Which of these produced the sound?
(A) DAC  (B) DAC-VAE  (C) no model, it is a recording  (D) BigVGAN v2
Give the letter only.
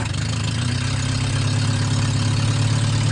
C